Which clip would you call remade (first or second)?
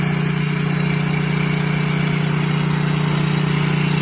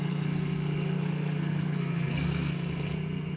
second